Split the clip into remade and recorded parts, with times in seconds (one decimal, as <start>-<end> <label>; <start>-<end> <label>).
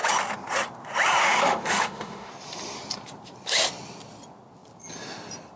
0.0-1.2 recorded; 1.2-2.3 remade; 2.3-5.6 recorded